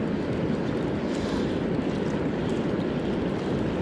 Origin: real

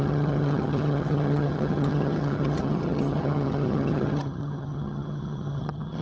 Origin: fake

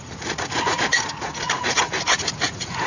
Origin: fake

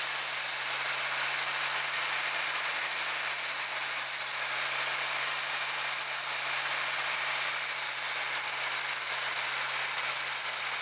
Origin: real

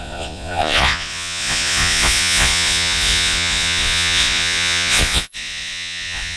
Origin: fake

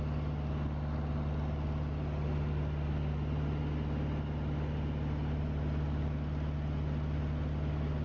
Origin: real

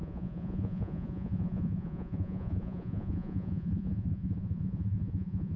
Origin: fake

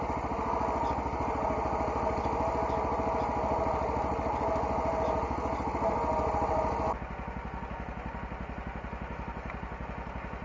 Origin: real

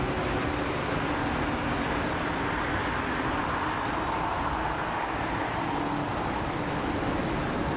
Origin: real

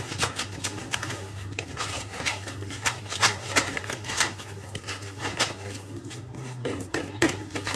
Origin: fake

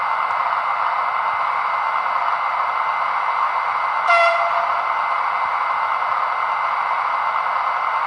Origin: real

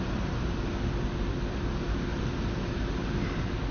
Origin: real